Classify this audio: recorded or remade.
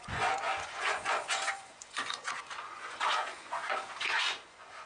remade